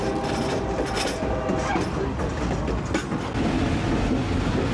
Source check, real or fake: real